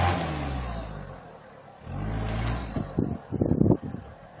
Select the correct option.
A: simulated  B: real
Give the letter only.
B